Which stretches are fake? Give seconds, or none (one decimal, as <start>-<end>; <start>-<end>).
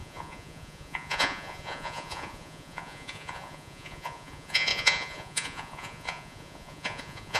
0.0-7.4